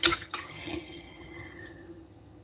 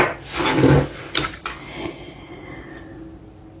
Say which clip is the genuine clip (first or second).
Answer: second